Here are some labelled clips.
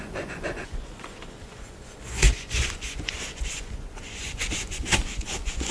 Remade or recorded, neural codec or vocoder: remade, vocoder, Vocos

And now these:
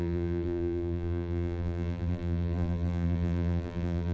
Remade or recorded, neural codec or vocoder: remade, vocoder, BigVGAN v2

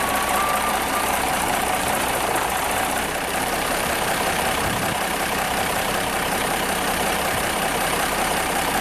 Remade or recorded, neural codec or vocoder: remade, vocoder, BigVGAN v2